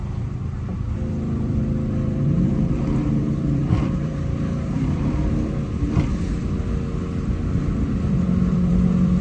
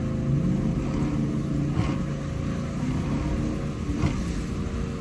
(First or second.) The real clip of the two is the second